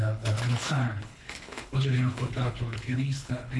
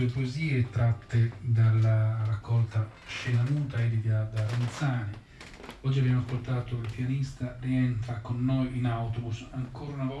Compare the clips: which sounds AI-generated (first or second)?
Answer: first